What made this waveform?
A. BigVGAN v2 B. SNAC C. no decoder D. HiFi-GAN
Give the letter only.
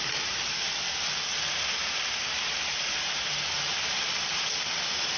A